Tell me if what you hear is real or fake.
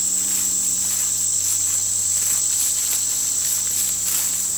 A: real